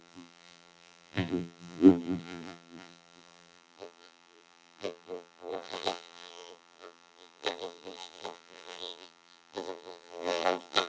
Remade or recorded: remade